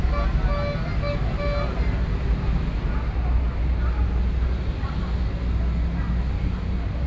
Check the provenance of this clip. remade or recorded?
recorded